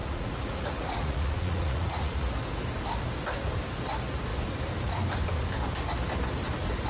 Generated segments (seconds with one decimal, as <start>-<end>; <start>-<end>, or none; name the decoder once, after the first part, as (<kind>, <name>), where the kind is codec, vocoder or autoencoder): 0.0-2.3 (vocoder, Vocos)